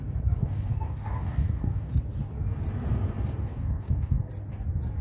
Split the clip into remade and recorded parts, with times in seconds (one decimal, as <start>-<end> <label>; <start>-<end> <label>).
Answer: 0.0-0.4 recorded; 0.4-1.9 remade; 1.9-3.4 recorded; 3.4-4.3 remade; 4.3-5.0 recorded

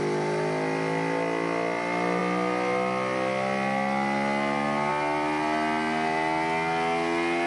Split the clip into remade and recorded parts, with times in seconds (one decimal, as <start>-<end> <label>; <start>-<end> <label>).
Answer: 0.0-7.5 recorded

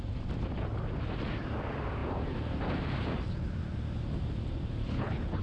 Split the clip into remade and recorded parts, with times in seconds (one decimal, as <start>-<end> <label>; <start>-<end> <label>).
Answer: 0.0-4.8 recorded; 4.8-5.4 remade

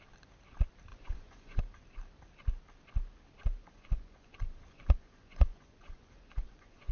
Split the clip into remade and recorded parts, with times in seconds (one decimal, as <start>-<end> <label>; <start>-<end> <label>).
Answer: 0.0-0.9 recorded; 0.9-1.6 remade; 1.6-3.6 recorded; 3.6-6.9 remade

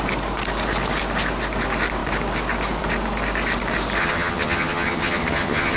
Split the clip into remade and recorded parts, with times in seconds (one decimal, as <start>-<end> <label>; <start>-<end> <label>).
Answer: 0.0-4.0 recorded; 4.0-5.8 remade

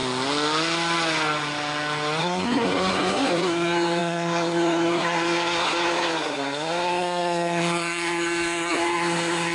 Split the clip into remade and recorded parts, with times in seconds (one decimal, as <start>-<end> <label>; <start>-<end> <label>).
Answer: 0.0-2.2 recorded; 2.2-9.5 remade

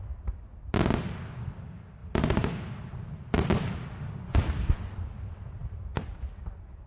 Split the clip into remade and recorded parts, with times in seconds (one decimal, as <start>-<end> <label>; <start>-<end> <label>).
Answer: 0.0-6.9 recorded

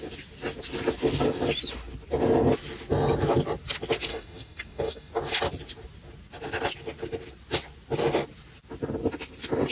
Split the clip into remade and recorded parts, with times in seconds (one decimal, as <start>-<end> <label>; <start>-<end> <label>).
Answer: 0.0-4.1 recorded; 4.1-5.1 remade; 5.1-9.7 recorded